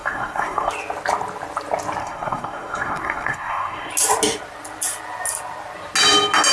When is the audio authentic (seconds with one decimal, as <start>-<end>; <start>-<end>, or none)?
0.7-2.0; 3.9-6.5